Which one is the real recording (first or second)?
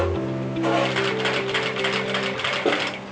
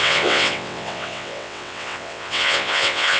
first